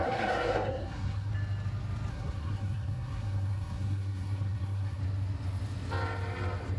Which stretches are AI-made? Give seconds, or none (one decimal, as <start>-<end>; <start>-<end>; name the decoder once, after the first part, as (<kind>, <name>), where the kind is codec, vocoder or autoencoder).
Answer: 0.0-1.3 (codec, SNAC); 2.1-5.0